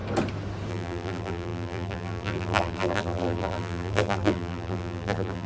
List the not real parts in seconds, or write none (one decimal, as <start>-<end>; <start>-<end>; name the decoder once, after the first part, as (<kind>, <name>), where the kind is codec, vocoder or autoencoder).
0.7-5.5 (vocoder, BigVGAN v2)